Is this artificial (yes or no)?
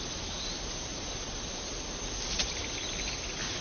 no